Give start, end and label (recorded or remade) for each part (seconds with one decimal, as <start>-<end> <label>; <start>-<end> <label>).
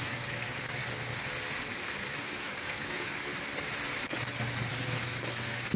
0.0-0.8 remade; 0.8-1.7 recorded; 1.7-3.3 remade; 3.3-4.7 recorded; 4.7-5.8 remade